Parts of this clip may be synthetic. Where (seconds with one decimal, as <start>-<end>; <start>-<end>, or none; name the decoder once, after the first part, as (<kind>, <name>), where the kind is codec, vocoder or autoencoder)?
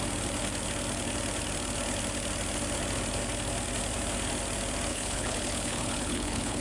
4.9-6.6 (codec, HILCodec)